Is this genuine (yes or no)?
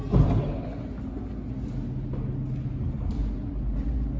yes